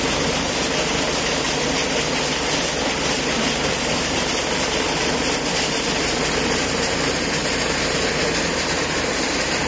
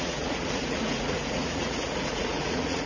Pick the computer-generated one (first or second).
second